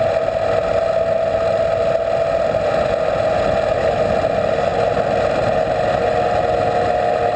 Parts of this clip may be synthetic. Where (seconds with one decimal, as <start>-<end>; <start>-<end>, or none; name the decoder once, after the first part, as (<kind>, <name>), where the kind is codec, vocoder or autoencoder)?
none